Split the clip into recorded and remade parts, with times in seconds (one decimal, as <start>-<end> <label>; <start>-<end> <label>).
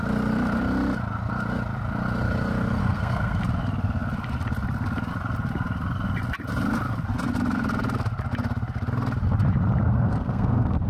0.0-2.8 recorded; 2.8-3.4 remade; 3.4-9.9 recorded; 9.9-10.9 remade